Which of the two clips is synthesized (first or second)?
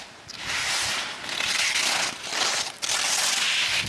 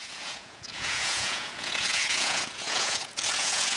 second